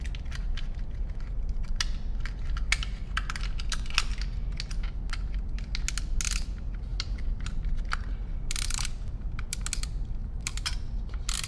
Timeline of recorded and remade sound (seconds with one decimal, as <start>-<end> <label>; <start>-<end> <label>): 0.0-0.4 recorded; 0.4-1.8 remade; 1.8-6.9 recorded; 6.9-9.6 remade; 9.6-10.2 recorded; 10.2-11.1 remade; 11.1-11.5 recorded